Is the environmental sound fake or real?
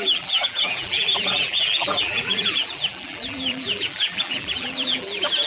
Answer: fake